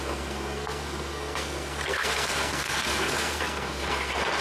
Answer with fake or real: fake